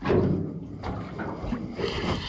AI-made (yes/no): no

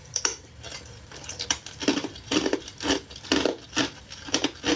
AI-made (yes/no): no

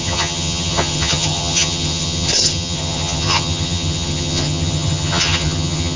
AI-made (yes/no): yes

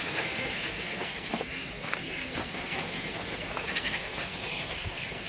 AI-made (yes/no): yes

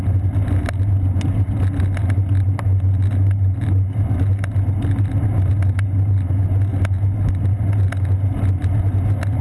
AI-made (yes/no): no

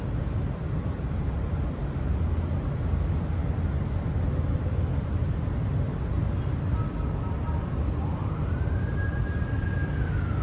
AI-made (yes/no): no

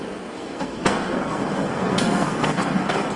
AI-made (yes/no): yes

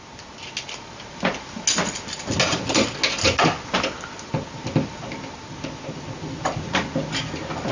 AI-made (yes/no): no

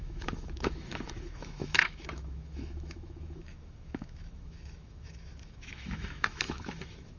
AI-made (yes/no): yes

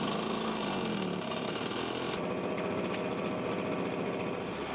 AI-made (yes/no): no